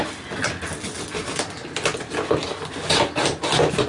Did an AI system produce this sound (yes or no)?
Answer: no